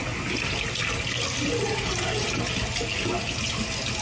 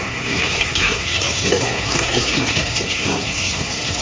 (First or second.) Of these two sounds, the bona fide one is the first